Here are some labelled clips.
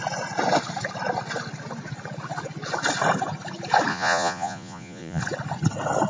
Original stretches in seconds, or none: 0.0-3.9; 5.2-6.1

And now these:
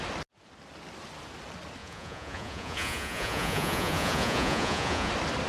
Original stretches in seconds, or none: 0.0-1.8; 5.1-5.5